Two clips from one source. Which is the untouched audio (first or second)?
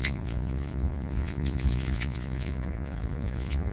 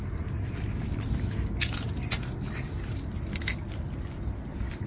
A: second